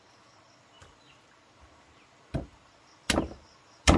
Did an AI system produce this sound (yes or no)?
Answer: no